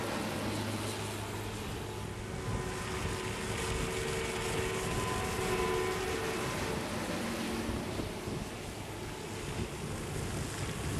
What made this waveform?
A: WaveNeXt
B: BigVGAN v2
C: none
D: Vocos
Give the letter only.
C